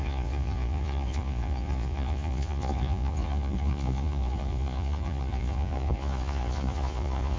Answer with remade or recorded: remade